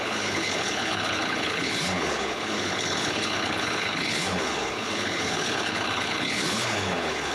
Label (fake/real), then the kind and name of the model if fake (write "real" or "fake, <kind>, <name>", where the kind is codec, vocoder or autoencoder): fake, codec, HILCodec